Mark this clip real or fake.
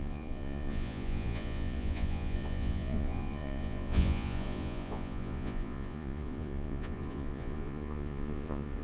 fake